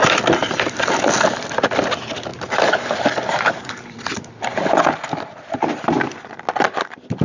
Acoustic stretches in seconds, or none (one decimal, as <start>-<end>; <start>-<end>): 0.0-7.2